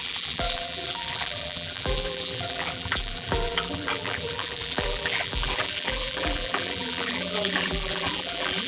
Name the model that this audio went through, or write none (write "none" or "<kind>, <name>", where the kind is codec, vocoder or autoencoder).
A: vocoder, BigVGAN v2